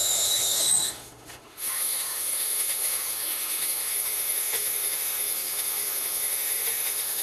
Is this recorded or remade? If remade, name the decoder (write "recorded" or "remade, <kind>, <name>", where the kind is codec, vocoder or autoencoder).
remade, autoencoder, DAC-VAE